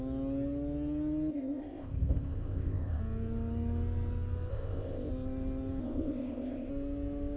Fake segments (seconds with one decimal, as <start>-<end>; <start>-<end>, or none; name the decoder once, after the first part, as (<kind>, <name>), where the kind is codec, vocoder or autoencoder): 1.3-3.0 (codec, ZipCodec); 4.5-5.1; 5.8-6.7